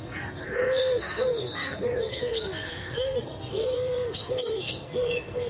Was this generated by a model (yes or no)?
yes